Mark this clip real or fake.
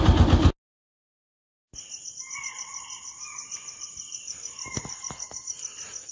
real